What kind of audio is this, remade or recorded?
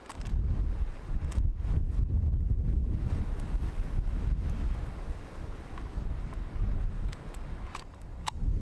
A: remade